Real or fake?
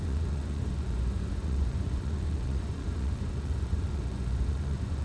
fake